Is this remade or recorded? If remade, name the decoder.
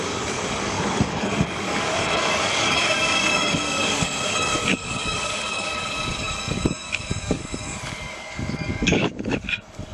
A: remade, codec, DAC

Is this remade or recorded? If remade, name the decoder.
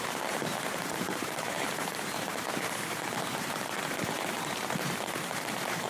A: remade, vocoder, BigVGAN v2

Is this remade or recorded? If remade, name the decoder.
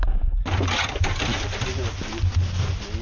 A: recorded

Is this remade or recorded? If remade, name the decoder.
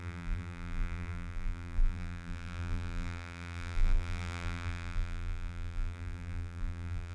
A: remade, vocoder, BigVGAN v2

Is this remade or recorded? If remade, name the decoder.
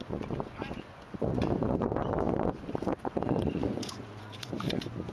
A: remade, vocoder, Vocos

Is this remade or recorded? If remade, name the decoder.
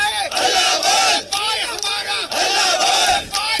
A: recorded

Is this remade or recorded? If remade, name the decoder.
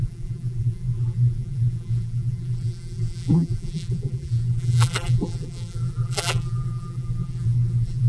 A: remade, vocoder, BigVGAN v2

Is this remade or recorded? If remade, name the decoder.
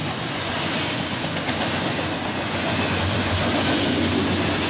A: remade, vocoder, Vocos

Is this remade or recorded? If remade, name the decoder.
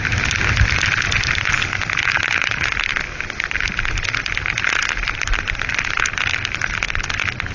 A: recorded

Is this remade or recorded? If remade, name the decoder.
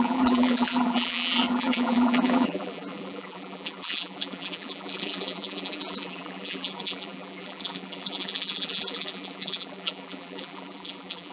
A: remade, vocoder, BigVGAN v2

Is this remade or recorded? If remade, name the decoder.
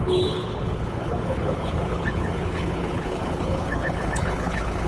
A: remade, codec, HILCodec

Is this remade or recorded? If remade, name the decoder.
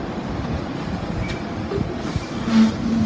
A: remade, vocoder, BigVGAN v2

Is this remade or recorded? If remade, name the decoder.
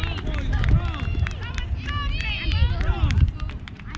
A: recorded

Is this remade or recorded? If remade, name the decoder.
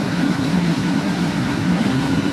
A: remade, codec, SNAC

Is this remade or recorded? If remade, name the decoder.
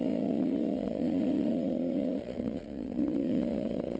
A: remade, vocoder, Vocos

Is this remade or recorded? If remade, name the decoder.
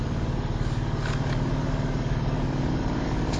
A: remade, codec, DAC